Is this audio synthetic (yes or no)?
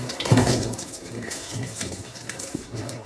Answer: yes